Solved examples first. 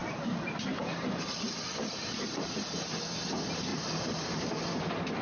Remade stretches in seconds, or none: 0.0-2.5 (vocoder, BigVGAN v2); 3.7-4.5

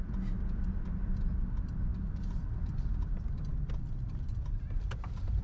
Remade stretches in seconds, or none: 1.9-5.4 (vocoder, BigVGAN v2)

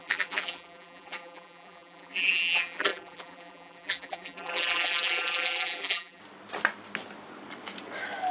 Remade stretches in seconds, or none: 0.0-6.2 (vocoder, BigVGAN v2)